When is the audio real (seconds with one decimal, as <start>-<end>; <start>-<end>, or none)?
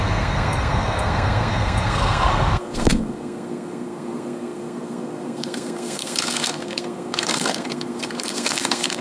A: none